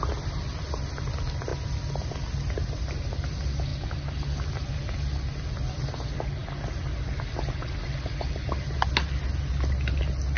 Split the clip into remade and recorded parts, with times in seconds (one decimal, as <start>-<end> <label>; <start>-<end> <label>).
0.0-10.4 recorded

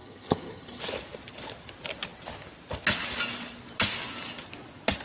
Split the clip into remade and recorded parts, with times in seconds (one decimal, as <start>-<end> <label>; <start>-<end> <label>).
0.0-0.8 remade; 0.8-5.0 recorded

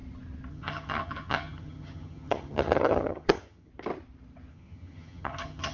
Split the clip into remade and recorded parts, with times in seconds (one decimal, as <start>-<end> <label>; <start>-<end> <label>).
0.0-0.5 recorded; 0.5-3.7 remade; 3.7-4.5 recorded; 4.5-5.7 remade

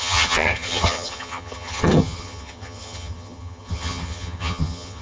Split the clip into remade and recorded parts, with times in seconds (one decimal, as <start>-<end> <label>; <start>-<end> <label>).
0.0-5.0 remade

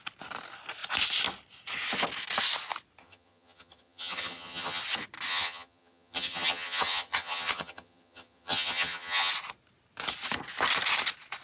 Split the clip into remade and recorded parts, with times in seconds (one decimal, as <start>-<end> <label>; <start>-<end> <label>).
0.0-3.0 recorded; 3.0-4.8 remade; 4.8-5.3 recorded; 5.3-9.3 remade; 9.3-11.4 recorded

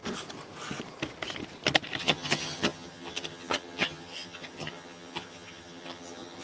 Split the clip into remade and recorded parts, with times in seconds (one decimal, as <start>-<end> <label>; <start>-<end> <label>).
0.0-2.0 recorded; 2.0-6.4 remade

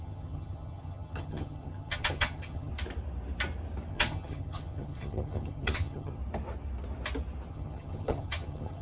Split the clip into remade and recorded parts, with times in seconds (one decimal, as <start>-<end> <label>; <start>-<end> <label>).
0.0-2.7 remade; 2.7-3.9 recorded; 3.9-6.2 remade; 6.2-7.5 recorded; 7.5-8.8 remade

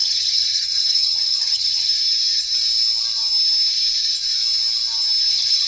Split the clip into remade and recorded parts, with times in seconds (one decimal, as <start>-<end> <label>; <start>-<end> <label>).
0.0-1.9 remade; 1.9-5.3 recorded; 5.3-5.7 remade